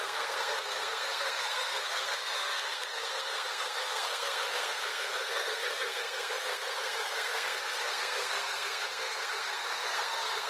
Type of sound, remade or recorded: remade